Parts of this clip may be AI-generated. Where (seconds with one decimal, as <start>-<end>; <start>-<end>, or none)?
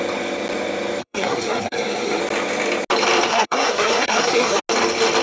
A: 1.0-2.2; 3.3-4.6